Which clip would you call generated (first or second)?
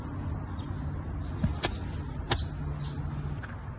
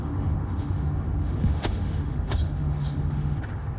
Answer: second